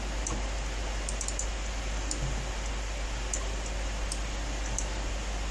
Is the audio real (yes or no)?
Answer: yes